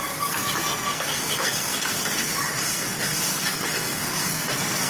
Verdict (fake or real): fake